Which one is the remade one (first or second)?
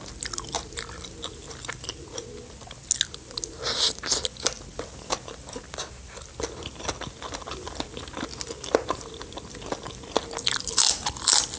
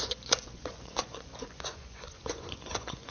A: second